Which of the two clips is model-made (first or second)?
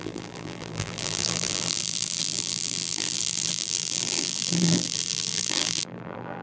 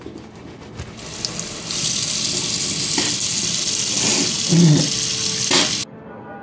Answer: first